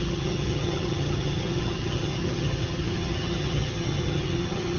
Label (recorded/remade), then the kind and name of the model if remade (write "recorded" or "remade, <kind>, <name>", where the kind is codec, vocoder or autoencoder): remade, vocoder, HiFi-GAN